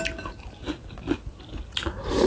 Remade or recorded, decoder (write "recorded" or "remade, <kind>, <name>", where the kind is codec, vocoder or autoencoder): recorded